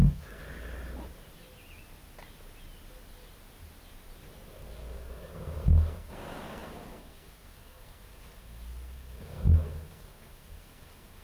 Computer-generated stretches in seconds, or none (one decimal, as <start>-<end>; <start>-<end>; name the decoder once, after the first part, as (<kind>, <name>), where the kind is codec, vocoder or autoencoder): 0.0-0.4 (codec, SNAC); 4.5-11.2